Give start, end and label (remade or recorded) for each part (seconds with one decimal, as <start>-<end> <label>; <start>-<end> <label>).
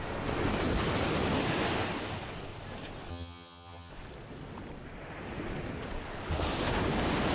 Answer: 0.0-3.1 recorded; 3.1-3.9 remade; 3.9-7.3 recorded